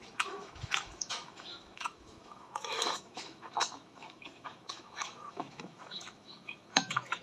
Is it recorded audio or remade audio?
remade